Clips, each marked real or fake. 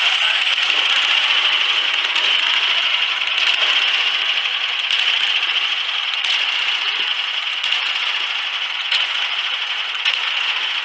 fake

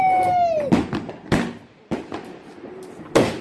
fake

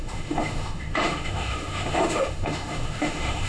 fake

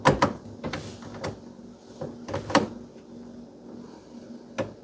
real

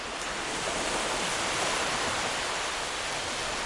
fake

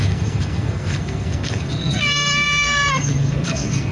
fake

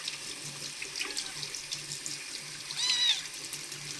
real